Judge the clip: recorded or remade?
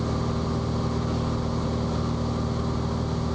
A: recorded